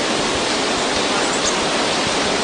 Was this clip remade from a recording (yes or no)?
no